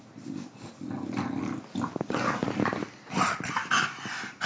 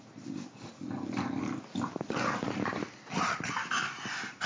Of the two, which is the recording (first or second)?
first